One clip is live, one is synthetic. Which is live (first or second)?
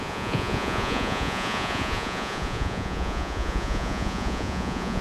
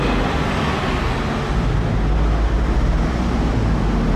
second